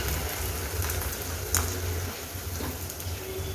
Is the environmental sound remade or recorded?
recorded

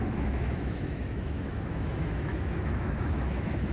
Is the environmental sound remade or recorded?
remade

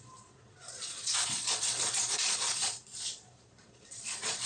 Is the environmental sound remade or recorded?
remade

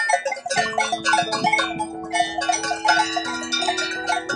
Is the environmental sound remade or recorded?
recorded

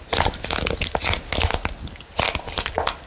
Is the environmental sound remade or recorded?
recorded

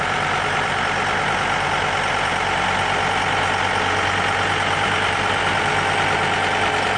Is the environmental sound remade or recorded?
recorded